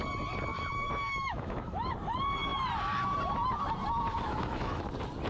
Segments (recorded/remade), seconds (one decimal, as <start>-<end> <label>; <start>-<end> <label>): 0.0-0.5 recorded; 0.5-1.9 remade; 1.9-4.1 recorded; 4.1-4.8 remade; 4.8-5.3 recorded